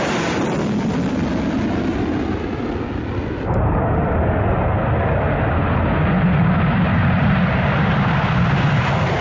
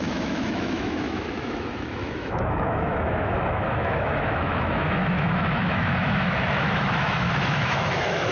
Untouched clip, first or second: first